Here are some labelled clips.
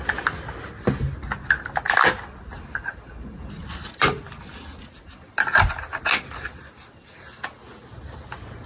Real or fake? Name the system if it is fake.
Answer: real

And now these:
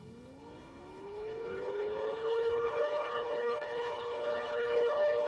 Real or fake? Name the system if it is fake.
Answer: fake, codec, HILCodec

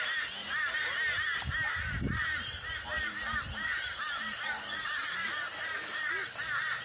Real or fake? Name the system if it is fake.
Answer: real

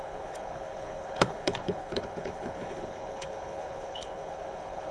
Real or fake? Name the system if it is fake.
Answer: fake, codec, HILCodec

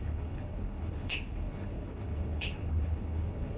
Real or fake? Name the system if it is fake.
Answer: fake, codec, HILCodec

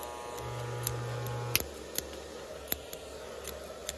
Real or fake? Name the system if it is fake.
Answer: real